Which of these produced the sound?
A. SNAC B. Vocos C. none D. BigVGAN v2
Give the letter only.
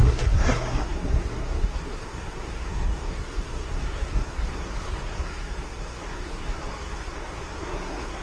A